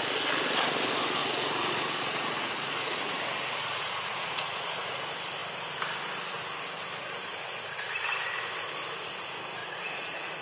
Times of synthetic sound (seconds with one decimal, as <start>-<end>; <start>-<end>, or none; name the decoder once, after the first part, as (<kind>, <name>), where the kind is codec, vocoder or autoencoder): 1.2-5.0 (vocoder, Vocos); 9.6-10.4